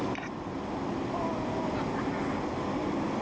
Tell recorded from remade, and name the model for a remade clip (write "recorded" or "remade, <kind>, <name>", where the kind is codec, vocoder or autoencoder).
recorded